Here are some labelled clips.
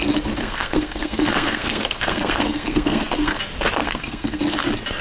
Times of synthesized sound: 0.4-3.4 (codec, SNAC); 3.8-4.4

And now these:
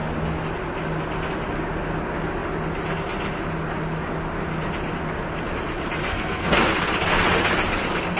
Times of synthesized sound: 6.1-6.6 (codec, SNAC)

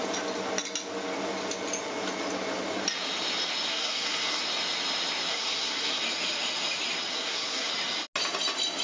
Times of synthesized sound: 3.7-4.4 (codec, SNAC); 5.3-6.0; 7.1-7.7

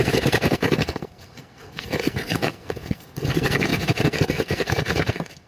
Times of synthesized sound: 0.0-5.5 (codec, SNAC)